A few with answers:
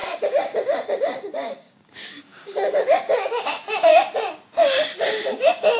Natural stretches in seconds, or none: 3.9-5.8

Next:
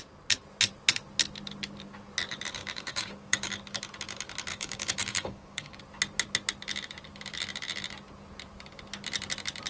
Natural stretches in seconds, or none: 0.0-2.6; 3.5-4.5; 5.8-9.7

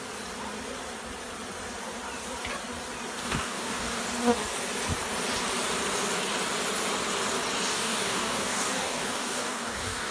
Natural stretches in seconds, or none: 0.0-3.2; 4.0-7.7

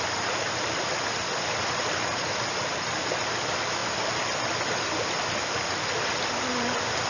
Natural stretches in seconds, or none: 0.0-7.1

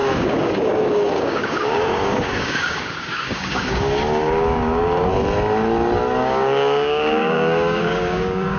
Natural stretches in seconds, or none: 5.1-6.2

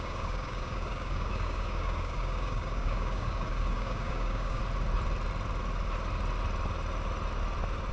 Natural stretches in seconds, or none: 4.6-7.9

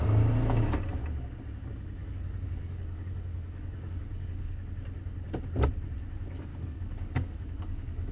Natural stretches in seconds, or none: 0.0-2.0; 4.6-6.5

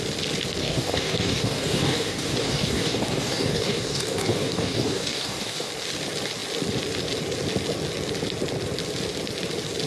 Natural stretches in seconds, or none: 0.0-0.6; 5.7-9.9